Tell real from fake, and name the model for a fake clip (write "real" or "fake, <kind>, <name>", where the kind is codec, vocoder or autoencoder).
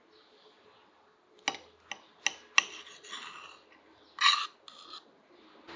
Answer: real